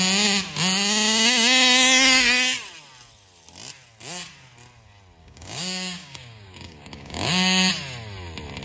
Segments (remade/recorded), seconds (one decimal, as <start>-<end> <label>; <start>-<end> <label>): 0.0-5.2 recorded; 5.2-7.7 remade; 7.7-8.6 recorded